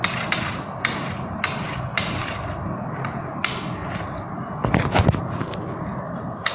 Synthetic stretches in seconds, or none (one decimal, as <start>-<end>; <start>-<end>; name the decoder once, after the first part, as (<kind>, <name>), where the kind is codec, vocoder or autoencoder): none